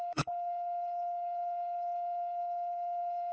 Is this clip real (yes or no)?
no